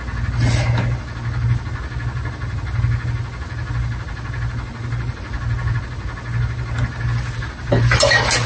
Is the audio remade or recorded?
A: recorded